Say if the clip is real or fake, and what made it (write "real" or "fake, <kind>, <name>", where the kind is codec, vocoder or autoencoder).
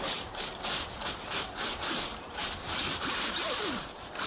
fake, vocoder, BigVGAN v2